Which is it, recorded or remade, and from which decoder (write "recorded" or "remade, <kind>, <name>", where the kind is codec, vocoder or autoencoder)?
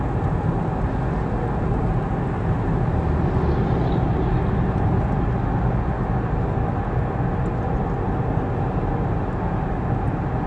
recorded